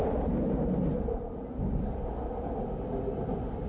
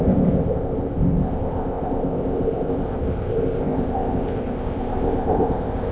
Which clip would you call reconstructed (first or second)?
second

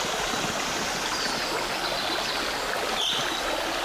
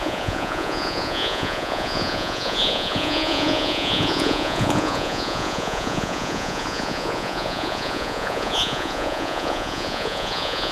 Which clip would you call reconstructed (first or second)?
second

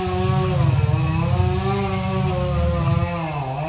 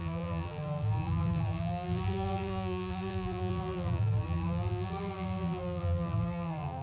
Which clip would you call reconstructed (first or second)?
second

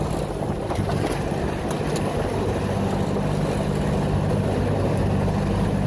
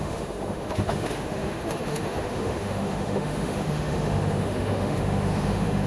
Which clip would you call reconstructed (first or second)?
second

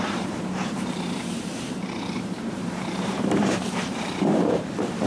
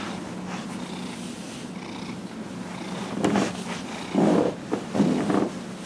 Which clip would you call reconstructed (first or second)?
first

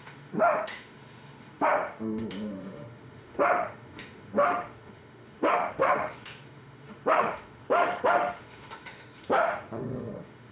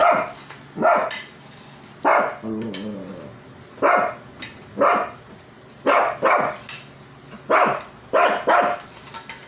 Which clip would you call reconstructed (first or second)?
first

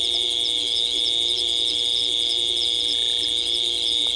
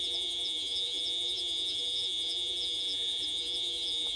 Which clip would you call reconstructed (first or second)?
second